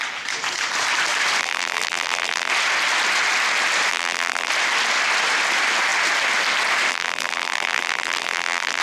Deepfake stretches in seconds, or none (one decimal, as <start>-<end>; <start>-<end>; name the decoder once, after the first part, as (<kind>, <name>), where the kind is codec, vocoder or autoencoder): 1.4-2.5 (vocoder, BigVGAN v2); 3.9-4.5; 6.9-8.8